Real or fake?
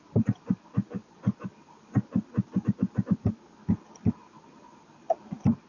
real